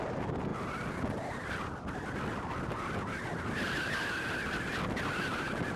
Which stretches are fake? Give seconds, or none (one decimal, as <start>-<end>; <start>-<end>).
none